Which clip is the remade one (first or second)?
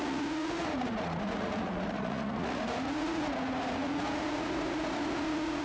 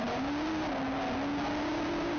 first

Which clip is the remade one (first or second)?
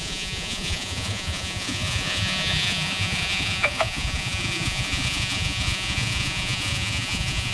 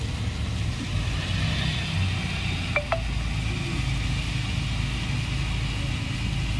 first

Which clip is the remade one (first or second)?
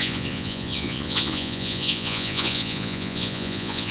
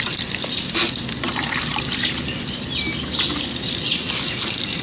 first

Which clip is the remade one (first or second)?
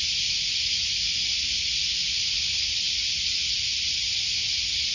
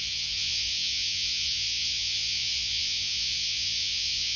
second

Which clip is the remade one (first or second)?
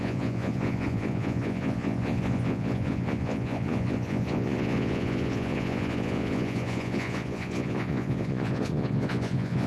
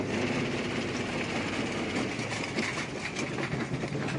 first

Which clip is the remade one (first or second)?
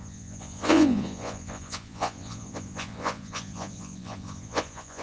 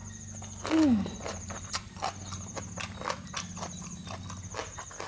first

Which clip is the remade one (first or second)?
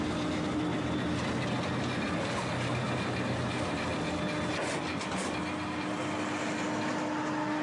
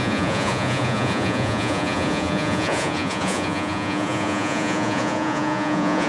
second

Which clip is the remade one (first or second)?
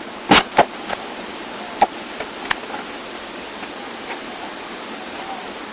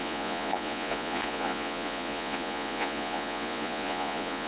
second